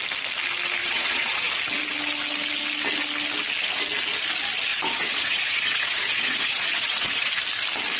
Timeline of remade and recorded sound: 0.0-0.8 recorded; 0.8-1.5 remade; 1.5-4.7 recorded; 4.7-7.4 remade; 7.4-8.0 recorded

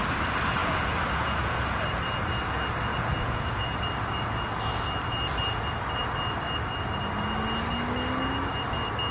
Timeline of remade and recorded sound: 0.0-0.6 recorded; 0.6-1.8 remade; 1.8-2.9 recorded; 2.9-3.8 remade; 3.8-9.1 recorded

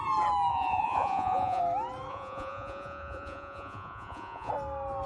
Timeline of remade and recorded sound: 0.0-0.5 recorded; 0.5-1.6 remade; 1.6-2.1 recorded; 2.1-4.5 remade; 4.5-5.1 recorded

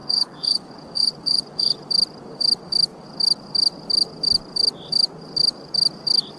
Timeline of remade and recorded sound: 0.0-1.8 remade; 1.8-6.4 recorded

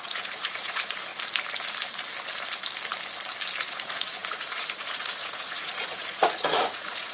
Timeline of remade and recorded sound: 0.0-1.1 remade; 1.1-3.6 recorded; 3.6-7.1 remade

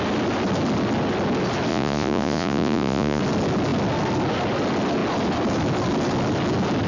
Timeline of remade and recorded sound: 0.0-1.7 recorded; 1.7-3.2 remade; 3.2-6.9 recorded

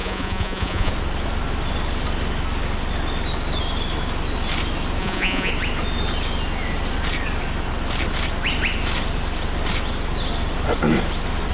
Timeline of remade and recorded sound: 0.0-0.9 remade; 0.9-5.0 recorded; 5.0-5.5 remade; 5.5-11.5 recorded